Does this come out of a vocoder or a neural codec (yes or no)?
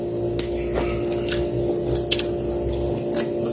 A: no